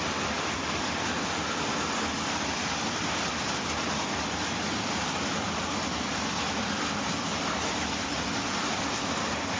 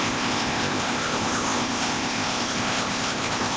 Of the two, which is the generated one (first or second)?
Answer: second